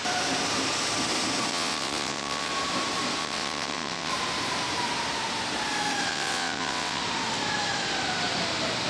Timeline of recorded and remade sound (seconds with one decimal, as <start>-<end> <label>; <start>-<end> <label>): 0.0-1.5 recorded; 1.5-2.5 remade; 2.5-3.2 recorded; 3.2-4.1 remade; 4.1-6.1 recorded; 6.1-7.0 remade; 7.0-8.9 recorded

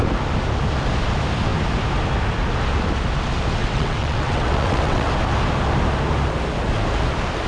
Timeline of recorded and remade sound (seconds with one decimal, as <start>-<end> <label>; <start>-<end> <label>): 0.0-3.6 recorded; 3.6-5.1 remade; 5.1-7.5 recorded

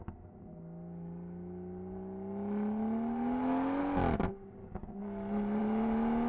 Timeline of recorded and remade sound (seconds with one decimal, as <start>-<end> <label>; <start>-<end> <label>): 0.0-6.3 recorded

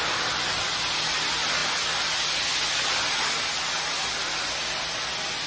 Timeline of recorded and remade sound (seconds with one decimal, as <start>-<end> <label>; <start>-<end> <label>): 0.0-5.5 recorded

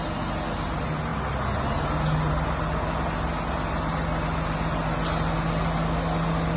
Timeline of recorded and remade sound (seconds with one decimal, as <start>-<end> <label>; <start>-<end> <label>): 0.0-6.6 recorded

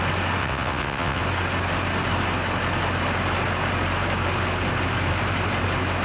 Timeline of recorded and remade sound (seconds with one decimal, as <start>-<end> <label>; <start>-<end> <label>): 0.0-0.4 recorded; 0.4-1.2 remade; 1.2-6.0 recorded

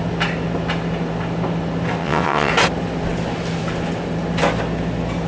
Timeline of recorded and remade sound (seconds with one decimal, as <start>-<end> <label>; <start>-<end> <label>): 0.0-2.0 recorded; 2.0-2.5 remade; 2.5-5.3 recorded